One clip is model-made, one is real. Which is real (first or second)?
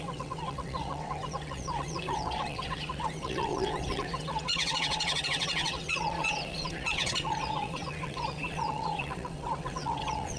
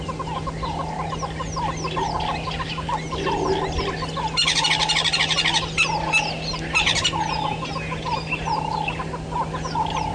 second